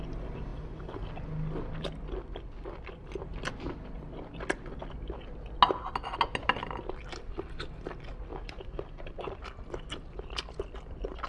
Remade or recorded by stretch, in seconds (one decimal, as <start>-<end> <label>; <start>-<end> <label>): 0.0-8.3 recorded; 8.3-9.4 remade; 9.4-11.3 recorded